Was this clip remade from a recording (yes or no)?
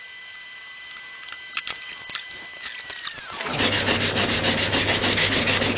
no